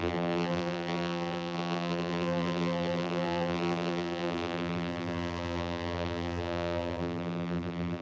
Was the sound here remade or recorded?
remade